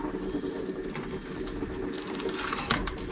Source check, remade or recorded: recorded